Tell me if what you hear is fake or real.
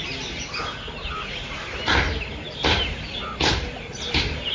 real